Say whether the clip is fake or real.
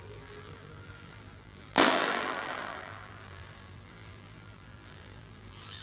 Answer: fake